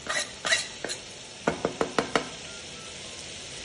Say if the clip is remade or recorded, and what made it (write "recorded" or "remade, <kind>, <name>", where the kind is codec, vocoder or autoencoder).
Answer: recorded